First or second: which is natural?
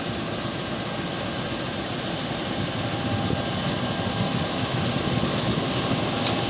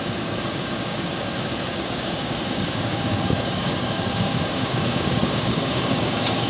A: first